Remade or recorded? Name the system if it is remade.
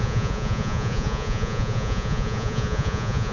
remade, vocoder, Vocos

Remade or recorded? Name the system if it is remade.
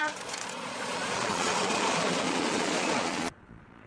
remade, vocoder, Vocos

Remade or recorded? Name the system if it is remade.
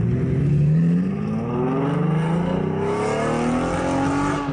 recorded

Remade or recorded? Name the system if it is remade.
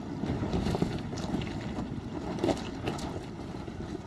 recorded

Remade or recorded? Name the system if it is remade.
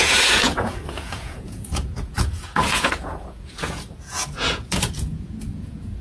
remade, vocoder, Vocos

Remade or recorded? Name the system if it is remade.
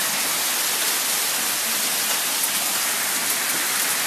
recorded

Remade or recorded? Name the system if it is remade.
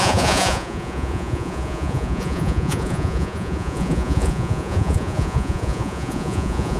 remade, vocoder, Vocos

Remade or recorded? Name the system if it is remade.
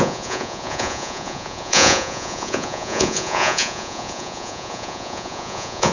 remade, vocoder, Vocos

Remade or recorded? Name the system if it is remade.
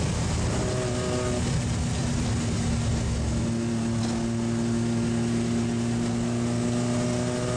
recorded